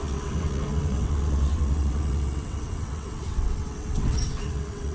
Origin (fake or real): fake